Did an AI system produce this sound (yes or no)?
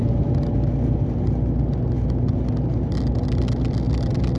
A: no